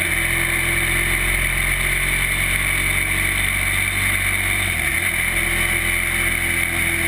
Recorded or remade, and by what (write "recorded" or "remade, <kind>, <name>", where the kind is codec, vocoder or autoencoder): recorded